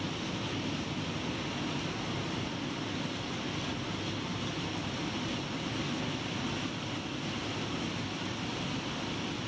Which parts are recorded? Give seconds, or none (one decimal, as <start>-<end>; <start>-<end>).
0.0-9.5